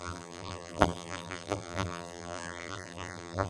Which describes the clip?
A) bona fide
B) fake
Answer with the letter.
B